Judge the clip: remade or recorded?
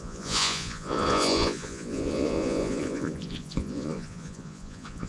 remade